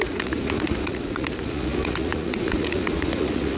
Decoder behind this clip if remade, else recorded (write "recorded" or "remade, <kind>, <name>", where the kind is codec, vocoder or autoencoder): remade, vocoder, Vocos